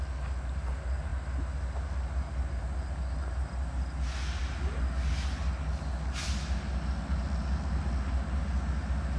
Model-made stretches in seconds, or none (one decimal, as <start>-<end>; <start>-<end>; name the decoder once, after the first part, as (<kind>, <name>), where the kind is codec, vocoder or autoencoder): none

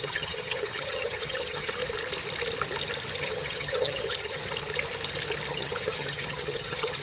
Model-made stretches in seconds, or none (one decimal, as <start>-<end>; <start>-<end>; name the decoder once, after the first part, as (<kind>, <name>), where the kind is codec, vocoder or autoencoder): 0.0-1.8 (vocoder, HiFi-GAN); 3.2-4.4; 5.5-7.0

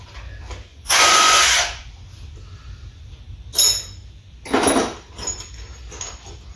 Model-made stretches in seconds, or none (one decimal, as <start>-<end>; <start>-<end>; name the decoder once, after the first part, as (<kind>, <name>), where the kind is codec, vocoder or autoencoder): 0.7-1.9 (vocoder, Vocos)

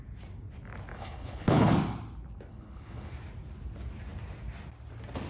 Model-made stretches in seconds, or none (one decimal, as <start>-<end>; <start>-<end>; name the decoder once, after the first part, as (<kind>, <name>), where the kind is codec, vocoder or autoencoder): 0.9-1.7 (codec, HILCodec); 2.5-3.1

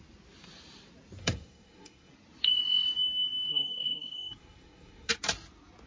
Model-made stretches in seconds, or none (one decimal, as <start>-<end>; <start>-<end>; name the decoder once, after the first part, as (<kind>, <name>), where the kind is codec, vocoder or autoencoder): 1.2-2.1 (codec, SNAC); 3.5-5.1

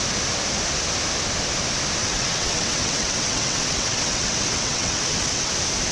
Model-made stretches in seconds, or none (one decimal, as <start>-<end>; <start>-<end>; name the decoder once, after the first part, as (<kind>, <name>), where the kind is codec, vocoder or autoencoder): 2.0-5.5 (vocoder, WaveNeXt)